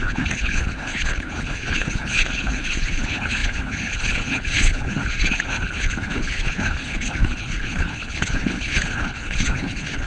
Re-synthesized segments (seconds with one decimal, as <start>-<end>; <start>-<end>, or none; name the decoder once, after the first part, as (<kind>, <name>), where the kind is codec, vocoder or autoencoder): 0.0-10.1 (codec, HILCodec)